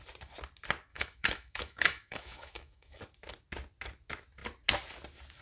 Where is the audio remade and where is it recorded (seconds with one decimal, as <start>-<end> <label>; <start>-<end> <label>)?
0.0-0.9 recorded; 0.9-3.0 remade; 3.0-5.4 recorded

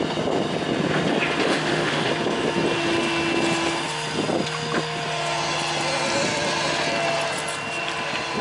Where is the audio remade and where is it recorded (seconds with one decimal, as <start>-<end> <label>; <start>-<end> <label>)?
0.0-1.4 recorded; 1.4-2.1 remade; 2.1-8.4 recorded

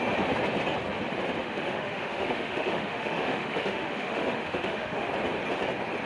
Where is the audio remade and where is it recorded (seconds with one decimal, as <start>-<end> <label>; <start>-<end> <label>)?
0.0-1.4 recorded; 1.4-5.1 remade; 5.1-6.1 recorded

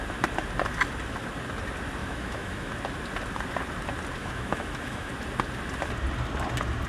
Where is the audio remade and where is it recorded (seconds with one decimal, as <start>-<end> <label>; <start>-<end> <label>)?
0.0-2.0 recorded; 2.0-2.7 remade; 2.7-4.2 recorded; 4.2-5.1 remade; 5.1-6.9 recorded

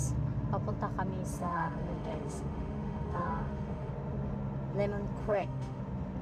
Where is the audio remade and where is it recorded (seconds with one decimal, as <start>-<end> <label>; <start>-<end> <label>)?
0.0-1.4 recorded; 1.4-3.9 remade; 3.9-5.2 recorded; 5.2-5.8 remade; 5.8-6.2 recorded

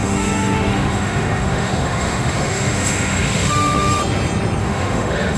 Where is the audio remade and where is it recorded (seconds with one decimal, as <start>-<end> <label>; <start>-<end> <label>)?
0.0-4.0 remade; 4.0-4.6 recorded; 4.6-5.4 remade

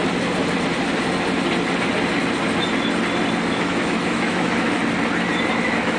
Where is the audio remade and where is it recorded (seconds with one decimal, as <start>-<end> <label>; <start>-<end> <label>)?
0.0-3.5 recorded; 3.5-4.8 remade; 4.8-5.6 recorded; 5.6-6.0 remade

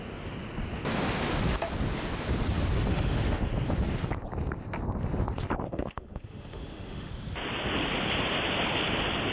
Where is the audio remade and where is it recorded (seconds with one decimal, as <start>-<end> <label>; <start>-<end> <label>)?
0.0-2.9 recorded; 2.9-3.5 remade; 3.5-5.7 recorded; 5.7-7.1 remade; 7.1-9.3 recorded